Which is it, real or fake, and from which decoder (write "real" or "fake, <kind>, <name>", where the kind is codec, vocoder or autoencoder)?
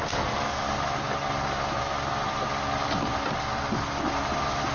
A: real